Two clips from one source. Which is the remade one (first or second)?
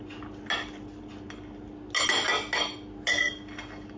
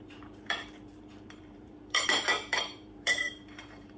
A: second